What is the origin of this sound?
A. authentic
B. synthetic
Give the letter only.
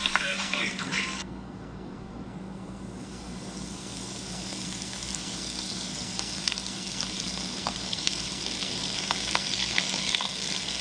B